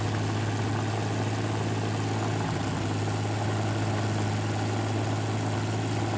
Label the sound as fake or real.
real